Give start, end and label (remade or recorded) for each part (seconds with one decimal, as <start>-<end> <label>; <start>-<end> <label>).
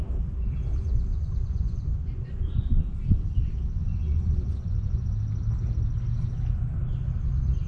0.0-1.1 recorded; 1.1-2.8 remade; 2.8-3.8 recorded; 3.8-5.1 remade; 5.1-7.7 recorded